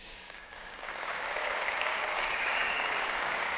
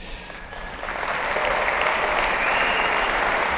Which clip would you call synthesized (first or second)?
first